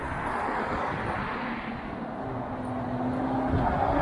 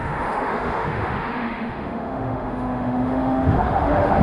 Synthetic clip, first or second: second